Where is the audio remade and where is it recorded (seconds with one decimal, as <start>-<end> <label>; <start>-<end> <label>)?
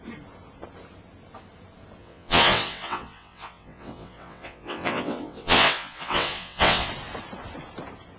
0.0-2.0 recorded; 2.0-6.9 remade; 6.9-8.2 recorded